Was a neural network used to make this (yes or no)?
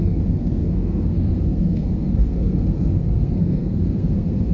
yes